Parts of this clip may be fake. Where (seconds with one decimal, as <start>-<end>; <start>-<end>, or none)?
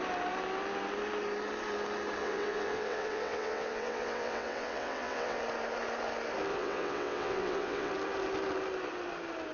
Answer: 2.2-5.4; 6.5-7.9